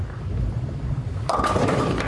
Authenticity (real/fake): real